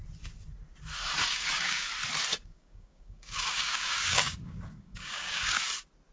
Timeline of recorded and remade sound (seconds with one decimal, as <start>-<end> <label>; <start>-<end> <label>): 0.0-1.3 recorded; 1.3-1.9 remade; 1.9-2.3 recorded; 2.3-5.6 remade; 5.6-6.1 recorded